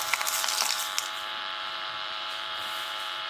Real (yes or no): no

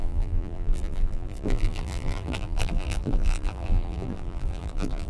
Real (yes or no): no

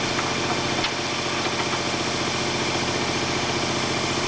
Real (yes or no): yes